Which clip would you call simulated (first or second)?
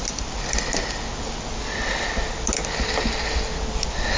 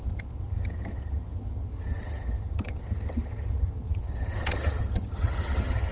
second